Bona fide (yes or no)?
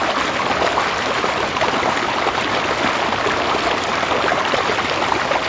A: yes